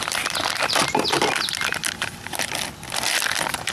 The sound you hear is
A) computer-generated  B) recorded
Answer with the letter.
B